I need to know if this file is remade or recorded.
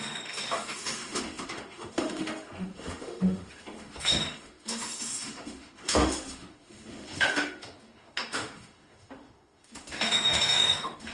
remade